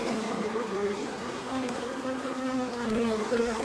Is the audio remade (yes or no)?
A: yes